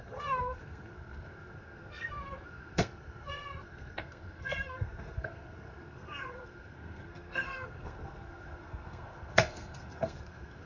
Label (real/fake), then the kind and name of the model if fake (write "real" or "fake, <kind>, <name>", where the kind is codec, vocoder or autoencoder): fake, codec, SNAC